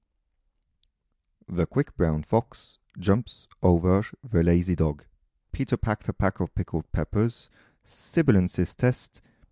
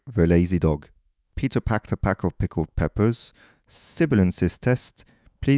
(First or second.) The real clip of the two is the first